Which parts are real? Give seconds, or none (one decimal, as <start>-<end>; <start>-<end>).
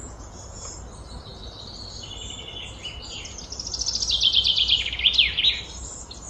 0.7-6.3